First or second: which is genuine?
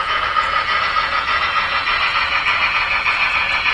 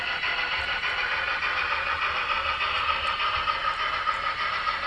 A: second